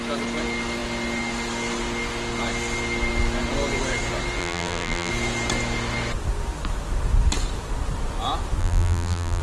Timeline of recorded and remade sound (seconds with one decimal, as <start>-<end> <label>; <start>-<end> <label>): 0.0-4.4 recorded; 4.4-5.1 remade; 5.1-8.6 recorded; 8.6-9.4 remade